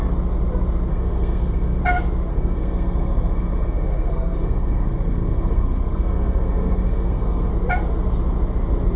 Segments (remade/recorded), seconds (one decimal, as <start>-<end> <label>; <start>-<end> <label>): 0.0-0.9 recorded; 0.9-1.8 remade; 1.8-2.3 recorded; 2.3-7.5 remade; 7.5-9.0 recorded